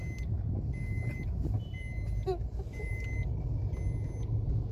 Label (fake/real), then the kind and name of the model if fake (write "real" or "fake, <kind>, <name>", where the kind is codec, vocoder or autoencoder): real